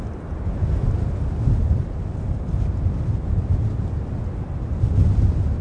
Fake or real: real